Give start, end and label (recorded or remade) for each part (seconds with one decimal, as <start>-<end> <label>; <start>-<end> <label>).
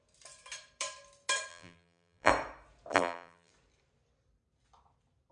0.0-1.5 recorded; 1.5-2.3 remade; 2.3-2.9 recorded; 2.9-3.5 remade; 3.5-5.3 recorded